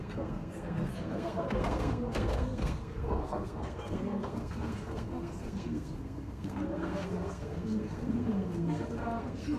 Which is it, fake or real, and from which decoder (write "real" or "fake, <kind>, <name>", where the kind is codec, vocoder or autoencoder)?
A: fake, codec, SNAC